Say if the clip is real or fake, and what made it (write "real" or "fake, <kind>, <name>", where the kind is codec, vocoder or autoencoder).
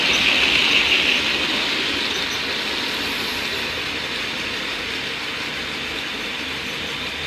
real